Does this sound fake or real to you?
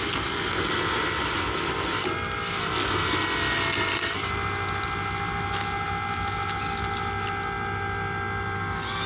real